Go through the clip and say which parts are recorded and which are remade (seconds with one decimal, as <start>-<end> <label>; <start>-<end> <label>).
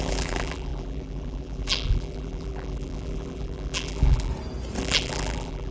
0.0-4.3 remade; 4.3-4.8 recorded; 4.8-5.7 remade